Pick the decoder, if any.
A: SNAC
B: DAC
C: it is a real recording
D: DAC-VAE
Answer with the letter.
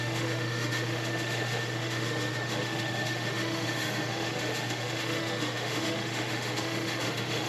D